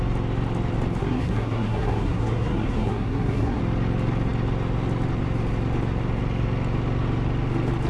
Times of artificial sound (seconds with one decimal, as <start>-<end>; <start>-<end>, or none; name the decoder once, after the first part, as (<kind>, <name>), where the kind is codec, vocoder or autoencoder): 1.0-3.6 (codec, SNAC)